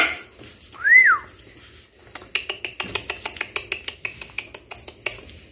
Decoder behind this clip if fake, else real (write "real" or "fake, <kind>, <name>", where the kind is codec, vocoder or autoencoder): real